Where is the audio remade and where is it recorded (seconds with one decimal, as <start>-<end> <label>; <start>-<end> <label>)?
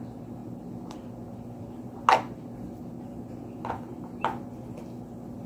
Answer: 0.0-5.5 recorded